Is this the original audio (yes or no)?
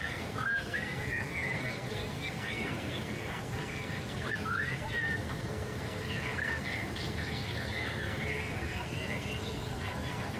no